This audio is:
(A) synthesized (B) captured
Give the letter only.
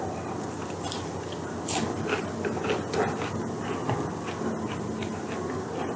B